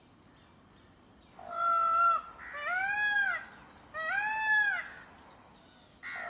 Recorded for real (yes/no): yes